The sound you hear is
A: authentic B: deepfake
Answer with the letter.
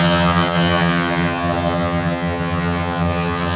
B